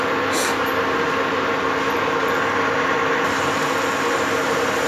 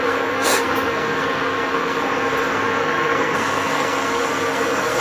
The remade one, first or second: second